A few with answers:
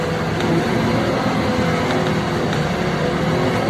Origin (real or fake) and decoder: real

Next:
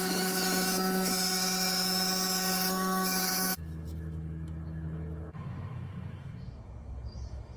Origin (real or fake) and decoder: fake, autoencoder, DAC-VAE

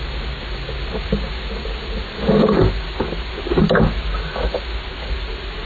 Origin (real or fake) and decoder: real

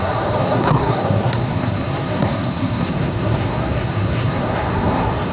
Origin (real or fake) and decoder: fake, codec, SNAC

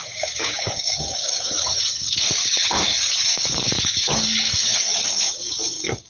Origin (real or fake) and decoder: fake, codec, DAC